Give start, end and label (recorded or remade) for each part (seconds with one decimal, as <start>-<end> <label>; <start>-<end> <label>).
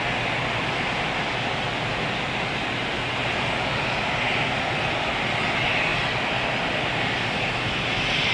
0.0-8.3 recorded